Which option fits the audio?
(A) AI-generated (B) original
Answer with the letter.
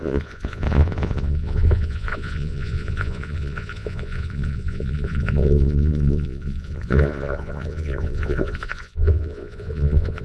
A